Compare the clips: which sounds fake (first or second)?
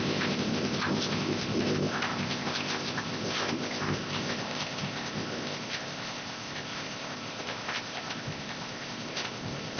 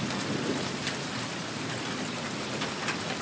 first